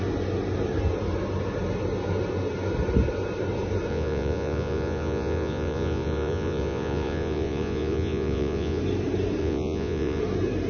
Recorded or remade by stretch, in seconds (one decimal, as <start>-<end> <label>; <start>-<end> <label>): 0.0-3.9 recorded; 3.9-8.8 remade; 8.8-9.4 recorded; 9.4-10.2 remade; 10.2-10.7 recorded